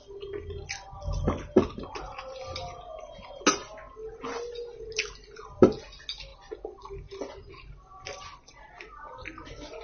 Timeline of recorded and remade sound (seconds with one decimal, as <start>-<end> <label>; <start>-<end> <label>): 0.0-9.8 recorded